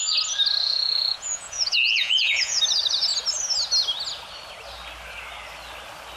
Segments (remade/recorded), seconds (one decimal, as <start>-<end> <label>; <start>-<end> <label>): 0.0-0.6 recorded; 0.6-2.6 remade; 2.6-6.2 recorded